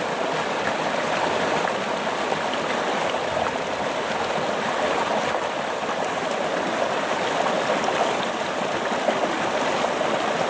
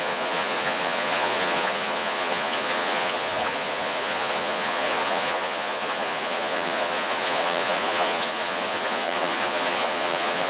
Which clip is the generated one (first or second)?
second